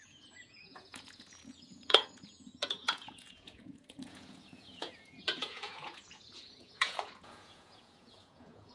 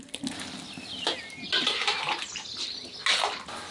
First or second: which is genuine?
second